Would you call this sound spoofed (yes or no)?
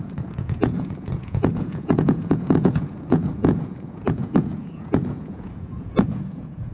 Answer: yes